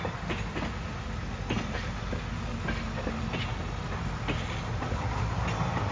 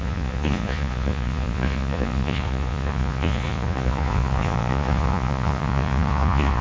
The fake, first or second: second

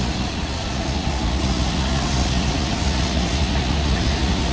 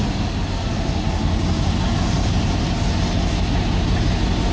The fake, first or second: first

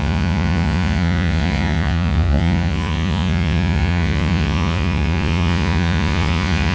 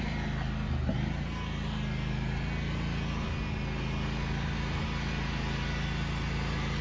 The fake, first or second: first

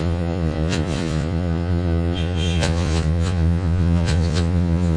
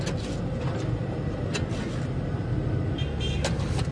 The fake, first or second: first